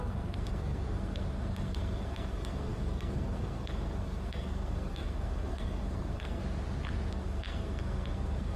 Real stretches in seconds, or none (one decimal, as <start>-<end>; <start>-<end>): 6.4-7.1